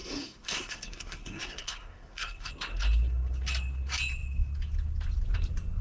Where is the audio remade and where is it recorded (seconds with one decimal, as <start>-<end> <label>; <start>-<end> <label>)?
0.0-2.5 remade; 2.5-5.8 recorded